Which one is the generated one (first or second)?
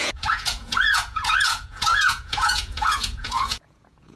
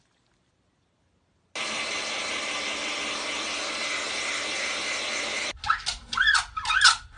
first